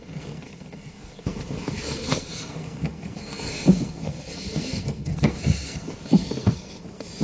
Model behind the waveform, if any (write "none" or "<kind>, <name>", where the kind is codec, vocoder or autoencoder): codec, SNAC